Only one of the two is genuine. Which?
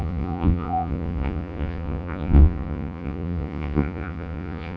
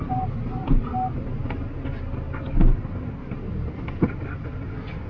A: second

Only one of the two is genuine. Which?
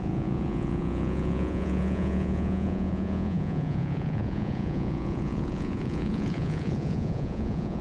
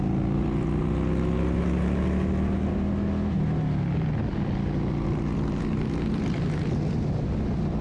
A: second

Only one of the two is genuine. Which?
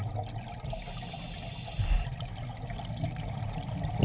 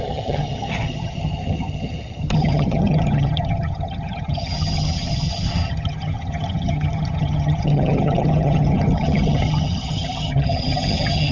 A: first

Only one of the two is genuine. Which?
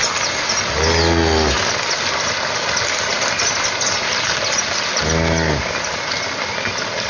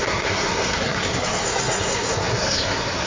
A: first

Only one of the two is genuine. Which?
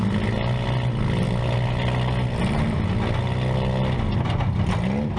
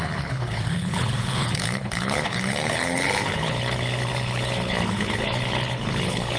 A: first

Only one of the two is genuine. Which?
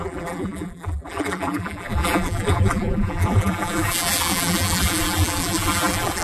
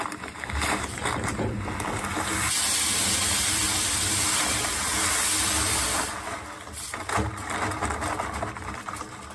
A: second